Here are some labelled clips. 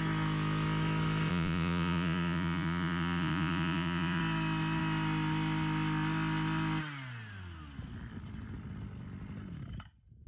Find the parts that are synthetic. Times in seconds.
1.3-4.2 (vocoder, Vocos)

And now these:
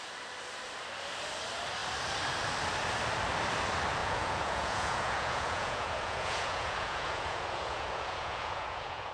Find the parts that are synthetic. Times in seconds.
4.0-9.1 (vocoder, Vocos)

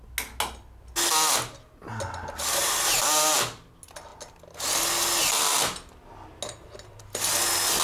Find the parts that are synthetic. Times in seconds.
none

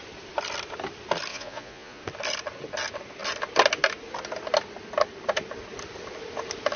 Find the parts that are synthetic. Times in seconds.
1.3-2.0 (vocoder, Vocos)